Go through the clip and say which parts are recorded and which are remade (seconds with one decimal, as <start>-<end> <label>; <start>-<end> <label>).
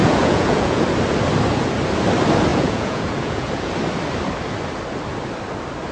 0.0-0.8 remade; 0.8-2.5 recorded; 2.5-3.7 remade; 3.7-5.9 recorded